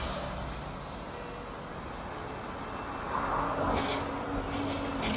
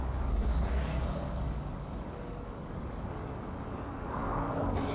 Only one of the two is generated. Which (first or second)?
second